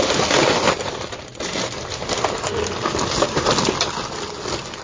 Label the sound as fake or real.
real